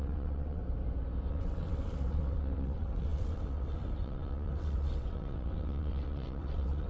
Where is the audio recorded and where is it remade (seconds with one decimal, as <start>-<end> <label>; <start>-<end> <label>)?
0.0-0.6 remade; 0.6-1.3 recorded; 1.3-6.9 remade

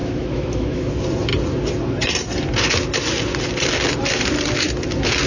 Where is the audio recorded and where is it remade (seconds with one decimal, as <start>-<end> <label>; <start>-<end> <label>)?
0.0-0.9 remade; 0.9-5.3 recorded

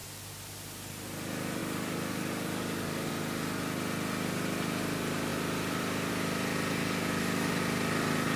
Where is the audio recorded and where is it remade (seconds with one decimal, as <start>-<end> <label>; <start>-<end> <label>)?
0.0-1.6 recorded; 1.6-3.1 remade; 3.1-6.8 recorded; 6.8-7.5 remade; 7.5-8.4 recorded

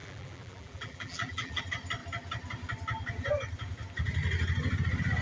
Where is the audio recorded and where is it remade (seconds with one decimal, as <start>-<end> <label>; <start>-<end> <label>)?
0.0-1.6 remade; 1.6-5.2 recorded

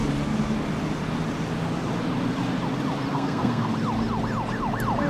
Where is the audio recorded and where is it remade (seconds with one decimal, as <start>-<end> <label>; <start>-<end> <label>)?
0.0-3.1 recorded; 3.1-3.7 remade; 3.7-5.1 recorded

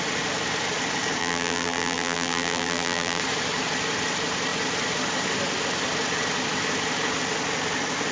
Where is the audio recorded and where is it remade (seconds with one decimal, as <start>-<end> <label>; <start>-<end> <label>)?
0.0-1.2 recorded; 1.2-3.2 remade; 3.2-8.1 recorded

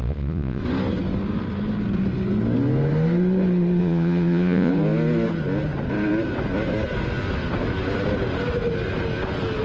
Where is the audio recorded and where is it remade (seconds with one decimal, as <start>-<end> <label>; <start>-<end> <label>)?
0.0-0.6 remade; 0.6-3.8 recorded; 3.8-4.7 remade; 4.7-9.6 recorded